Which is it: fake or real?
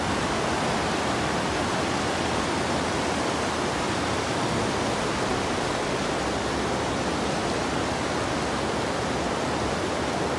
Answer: real